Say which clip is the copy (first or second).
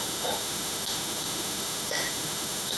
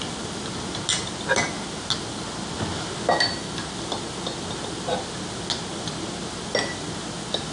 first